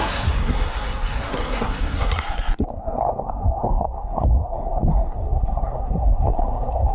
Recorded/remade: remade